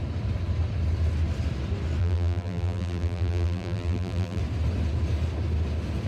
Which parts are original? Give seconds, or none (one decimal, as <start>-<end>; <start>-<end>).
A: 0.0-2.0; 4.4-6.1